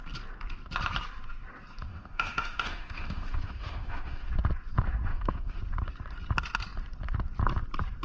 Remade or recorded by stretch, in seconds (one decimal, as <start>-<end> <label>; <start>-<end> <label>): 0.0-1.9 recorded; 1.9-4.3 remade; 4.3-5.1 recorded; 5.1-5.6 remade; 5.6-8.0 recorded